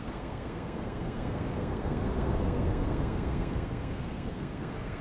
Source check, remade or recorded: remade